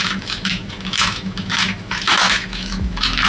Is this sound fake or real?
fake